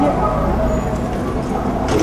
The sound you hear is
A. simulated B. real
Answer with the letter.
B